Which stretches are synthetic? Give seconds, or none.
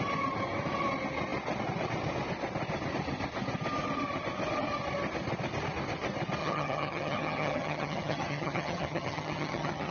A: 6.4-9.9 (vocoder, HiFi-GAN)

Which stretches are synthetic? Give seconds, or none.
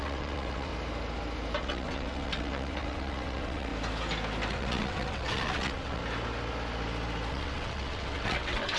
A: 0.0-0.7 (vocoder, WaveNeXt); 1.6-3.7; 4.5-6.0; 7.3-8.8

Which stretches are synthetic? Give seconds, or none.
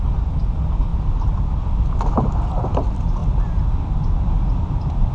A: none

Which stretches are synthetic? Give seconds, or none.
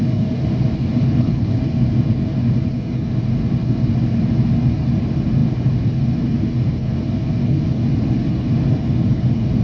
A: 1.0-1.6 (codec, HILCodec)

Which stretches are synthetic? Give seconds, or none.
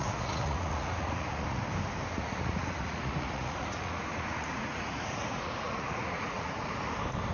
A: 0.0-1.6 (vocoder, Vocos); 2.1-6.5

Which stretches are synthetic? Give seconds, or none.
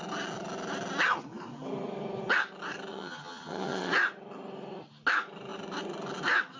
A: 2.9-3.9 (vocoder, HiFi-GAN)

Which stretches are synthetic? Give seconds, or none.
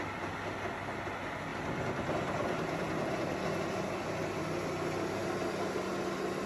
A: none